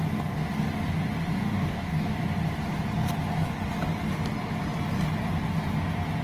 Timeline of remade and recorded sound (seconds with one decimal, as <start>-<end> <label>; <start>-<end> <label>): 0.0-1.5 recorded; 1.5-2.2 remade; 2.2-6.2 recorded